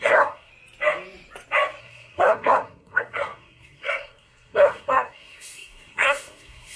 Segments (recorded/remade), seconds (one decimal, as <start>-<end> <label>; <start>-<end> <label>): 0.0-0.5 remade; 0.5-1.8 recorded; 1.8-6.8 remade